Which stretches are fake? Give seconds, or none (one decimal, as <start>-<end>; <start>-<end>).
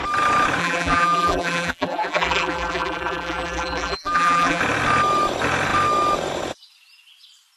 0.6-4.6